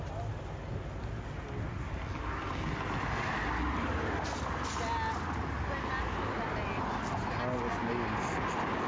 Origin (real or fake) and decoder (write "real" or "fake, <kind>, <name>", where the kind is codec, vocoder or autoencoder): real